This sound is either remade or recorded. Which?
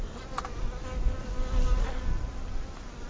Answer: recorded